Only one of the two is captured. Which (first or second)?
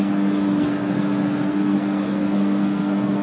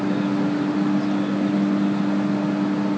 second